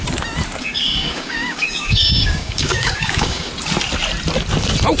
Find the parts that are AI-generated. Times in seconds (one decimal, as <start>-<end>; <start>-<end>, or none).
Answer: 0.6-3.5